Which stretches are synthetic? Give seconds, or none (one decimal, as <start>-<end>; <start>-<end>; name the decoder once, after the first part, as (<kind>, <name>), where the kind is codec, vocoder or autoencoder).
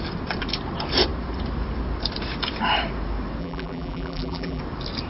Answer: 3.4-4.6 (vocoder, BigVGAN v2)